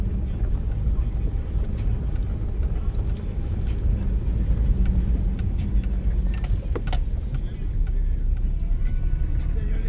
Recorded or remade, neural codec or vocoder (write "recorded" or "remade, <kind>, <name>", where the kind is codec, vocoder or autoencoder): recorded